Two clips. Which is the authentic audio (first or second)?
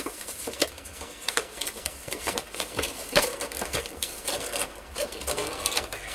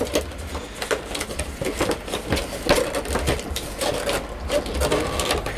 second